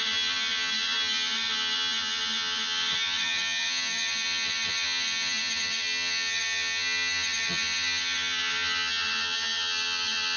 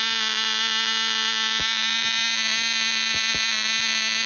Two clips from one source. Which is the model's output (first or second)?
first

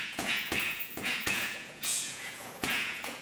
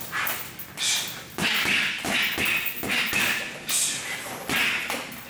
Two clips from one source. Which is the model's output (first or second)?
first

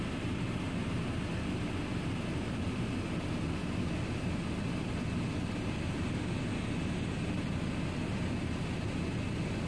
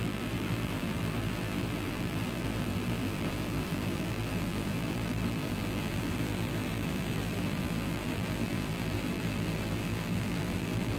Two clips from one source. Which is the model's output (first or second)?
second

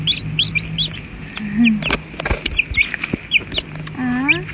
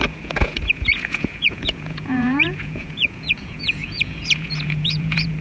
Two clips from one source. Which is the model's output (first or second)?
second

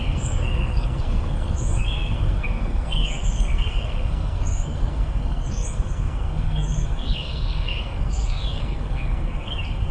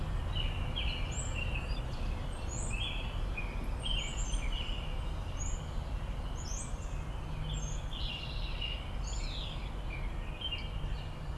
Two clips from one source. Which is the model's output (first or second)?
first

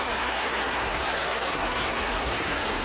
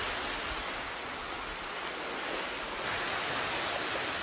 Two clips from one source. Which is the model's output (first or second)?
first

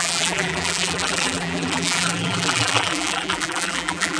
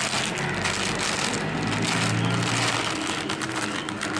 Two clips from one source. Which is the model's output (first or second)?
first